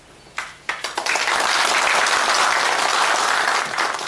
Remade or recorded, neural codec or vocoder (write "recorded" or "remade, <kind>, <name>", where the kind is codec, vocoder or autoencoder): recorded